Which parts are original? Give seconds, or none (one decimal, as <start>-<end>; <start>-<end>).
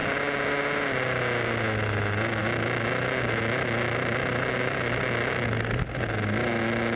0.0-7.0